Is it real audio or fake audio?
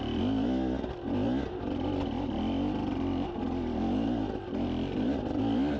real